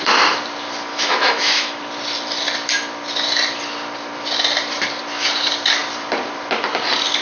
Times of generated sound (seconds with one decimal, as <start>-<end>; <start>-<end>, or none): 0.9-1.8